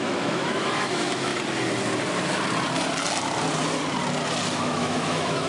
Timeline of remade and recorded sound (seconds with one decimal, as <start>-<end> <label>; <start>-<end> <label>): 0.0-1.3 remade; 1.3-4.6 recorded; 4.6-5.5 remade